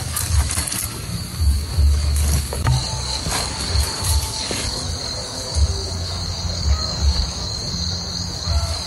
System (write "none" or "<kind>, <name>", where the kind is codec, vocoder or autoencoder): codec, DAC